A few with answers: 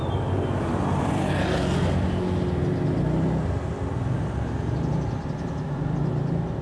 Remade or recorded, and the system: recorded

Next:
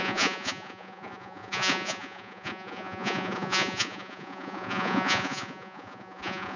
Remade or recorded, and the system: remade, vocoder, Vocos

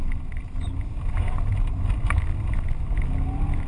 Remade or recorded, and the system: recorded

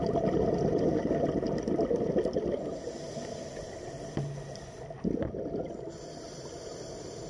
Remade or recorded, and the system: recorded